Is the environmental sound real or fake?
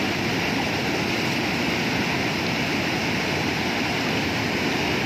real